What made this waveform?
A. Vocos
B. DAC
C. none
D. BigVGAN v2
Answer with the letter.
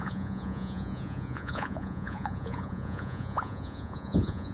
A